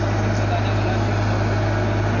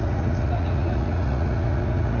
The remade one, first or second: second